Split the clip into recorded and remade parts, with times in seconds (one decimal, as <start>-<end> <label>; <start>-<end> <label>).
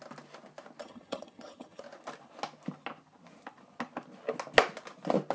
0.0-0.8 recorded; 0.8-1.8 remade; 1.8-5.3 recorded